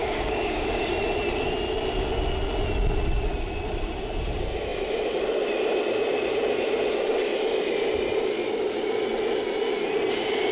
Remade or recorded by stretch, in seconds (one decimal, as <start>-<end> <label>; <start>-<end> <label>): 0.0-0.9 remade; 0.9-10.5 recorded